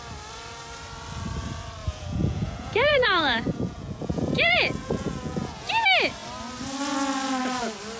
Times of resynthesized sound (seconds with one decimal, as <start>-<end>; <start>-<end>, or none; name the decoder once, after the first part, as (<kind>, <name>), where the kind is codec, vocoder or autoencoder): 1.8-5.7 (vocoder, Vocos)